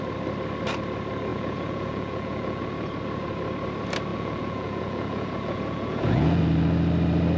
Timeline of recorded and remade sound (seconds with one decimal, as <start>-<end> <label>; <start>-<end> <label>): 0.0-1.3 recorded; 1.3-2.6 remade; 2.6-4.1 recorded; 4.1-6.4 remade; 6.4-7.4 recorded